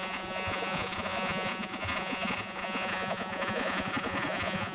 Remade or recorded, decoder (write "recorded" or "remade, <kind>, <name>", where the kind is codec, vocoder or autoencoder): remade, vocoder, Vocos